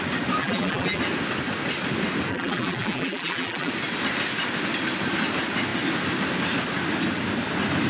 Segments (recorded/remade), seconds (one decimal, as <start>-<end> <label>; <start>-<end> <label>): 0.0-0.4 recorded; 0.4-1.0 remade; 1.0-2.3 recorded; 2.3-3.7 remade; 3.7-7.9 recorded